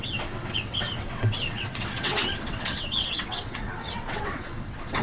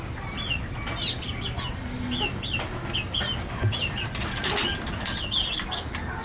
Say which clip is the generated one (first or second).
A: first